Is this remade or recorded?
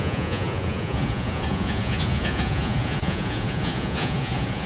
remade